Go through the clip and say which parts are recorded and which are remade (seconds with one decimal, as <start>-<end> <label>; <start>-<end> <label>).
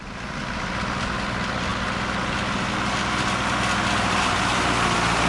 0.0-5.3 recorded